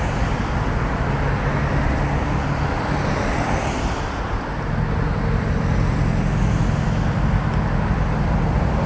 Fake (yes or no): no